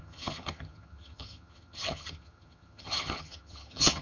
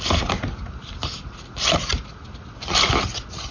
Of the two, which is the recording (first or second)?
second